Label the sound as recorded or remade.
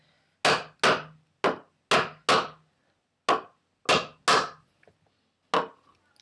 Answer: recorded